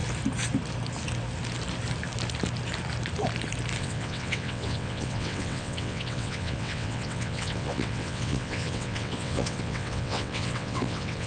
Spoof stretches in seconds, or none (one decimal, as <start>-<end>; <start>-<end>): 3.8-11.3